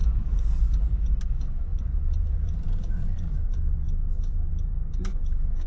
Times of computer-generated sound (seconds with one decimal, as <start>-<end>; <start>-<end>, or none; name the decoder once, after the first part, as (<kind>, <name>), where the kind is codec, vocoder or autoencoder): 0.0-1.0 (vocoder, BigVGAN v2); 1.7-5.1